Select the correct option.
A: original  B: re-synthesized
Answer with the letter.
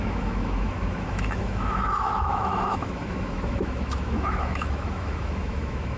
B